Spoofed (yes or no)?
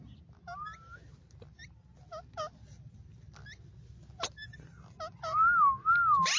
no